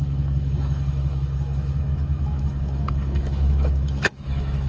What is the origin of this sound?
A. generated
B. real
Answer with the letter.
A